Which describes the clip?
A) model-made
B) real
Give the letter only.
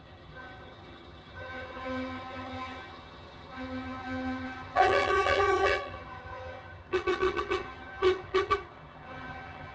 A